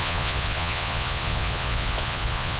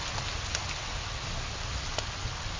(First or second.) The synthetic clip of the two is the first